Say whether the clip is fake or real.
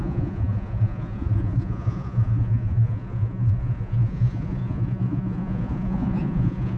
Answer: fake